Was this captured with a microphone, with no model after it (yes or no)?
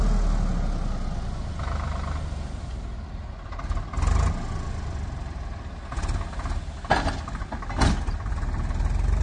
yes